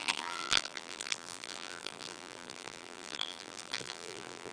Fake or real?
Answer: fake